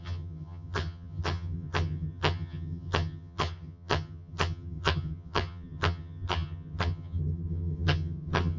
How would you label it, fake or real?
fake